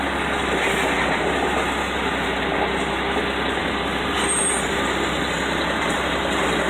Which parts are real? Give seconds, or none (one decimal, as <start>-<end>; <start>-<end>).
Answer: 0.0-6.7